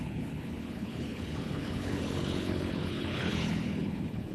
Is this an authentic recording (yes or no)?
no